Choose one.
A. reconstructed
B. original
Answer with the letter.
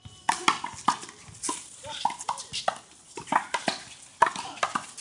B